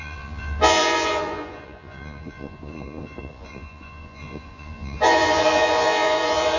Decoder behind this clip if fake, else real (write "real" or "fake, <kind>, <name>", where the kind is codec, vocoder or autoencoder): fake, vocoder, Vocos